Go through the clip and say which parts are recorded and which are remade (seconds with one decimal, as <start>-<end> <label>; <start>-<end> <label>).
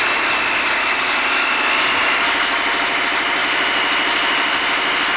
0.0-3.4 recorded; 3.4-5.2 remade